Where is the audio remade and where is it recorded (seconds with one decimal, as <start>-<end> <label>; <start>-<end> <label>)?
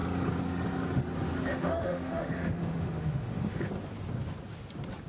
0.0-1.5 recorded; 1.5-3.7 remade; 3.7-5.1 recorded